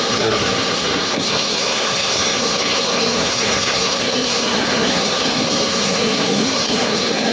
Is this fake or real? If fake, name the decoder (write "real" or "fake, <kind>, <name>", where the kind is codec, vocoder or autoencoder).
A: fake, codec, SNAC